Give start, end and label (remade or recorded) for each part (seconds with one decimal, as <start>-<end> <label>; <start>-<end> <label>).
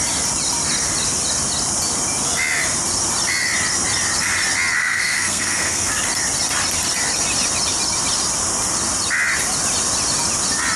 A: 0.0-4.8 recorded; 4.8-5.9 remade; 5.9-10.8 recorded